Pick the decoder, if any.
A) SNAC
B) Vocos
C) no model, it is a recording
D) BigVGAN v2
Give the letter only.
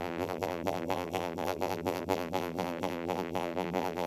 D